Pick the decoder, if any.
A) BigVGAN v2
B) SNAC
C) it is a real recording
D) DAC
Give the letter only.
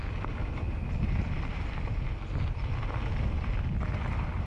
C